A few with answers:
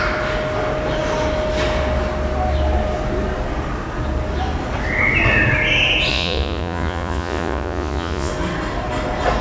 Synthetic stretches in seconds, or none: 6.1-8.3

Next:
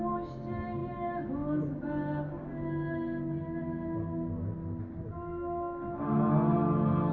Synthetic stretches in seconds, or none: none

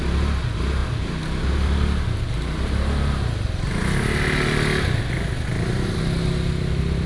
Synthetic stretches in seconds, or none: none

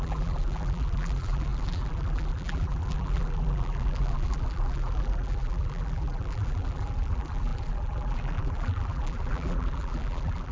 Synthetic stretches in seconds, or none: 0.0-10.5